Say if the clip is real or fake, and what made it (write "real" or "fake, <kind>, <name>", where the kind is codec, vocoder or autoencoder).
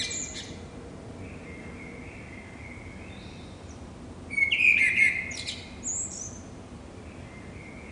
real